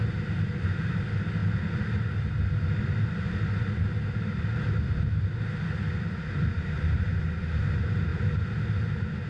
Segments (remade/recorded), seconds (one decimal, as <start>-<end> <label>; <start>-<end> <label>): 0.0-9.3 recorded